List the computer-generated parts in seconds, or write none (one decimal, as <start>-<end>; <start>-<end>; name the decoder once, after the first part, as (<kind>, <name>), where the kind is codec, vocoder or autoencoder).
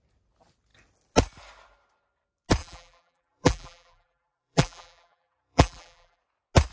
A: 2.6-6.2 (vocoder, BigVGAN v2)